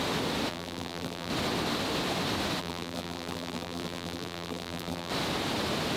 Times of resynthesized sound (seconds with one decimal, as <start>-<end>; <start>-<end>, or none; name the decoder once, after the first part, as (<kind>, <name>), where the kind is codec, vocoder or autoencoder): 0.5-1.3 (vocoder, BigVGAN v2); 2.6-5.1